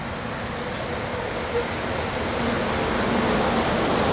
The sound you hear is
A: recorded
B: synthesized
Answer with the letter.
A